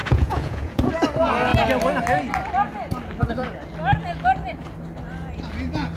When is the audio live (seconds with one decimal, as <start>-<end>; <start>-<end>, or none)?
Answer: 0.9-6.0